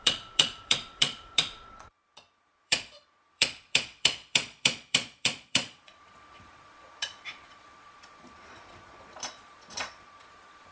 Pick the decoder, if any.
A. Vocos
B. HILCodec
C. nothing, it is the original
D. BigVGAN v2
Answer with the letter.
A